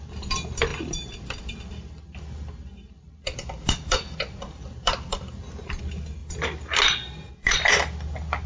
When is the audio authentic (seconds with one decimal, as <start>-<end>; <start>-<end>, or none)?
6.2-7.3